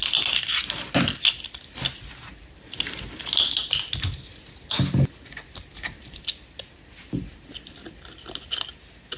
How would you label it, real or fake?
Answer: real